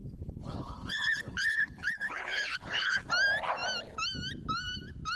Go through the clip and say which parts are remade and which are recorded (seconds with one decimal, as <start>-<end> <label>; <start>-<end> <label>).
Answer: 0.0-3.1 remade; 3.1-5.2 recorded